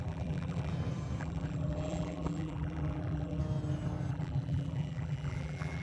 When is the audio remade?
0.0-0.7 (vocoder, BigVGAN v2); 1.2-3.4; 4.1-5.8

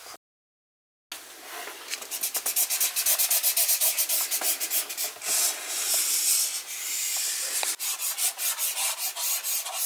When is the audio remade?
none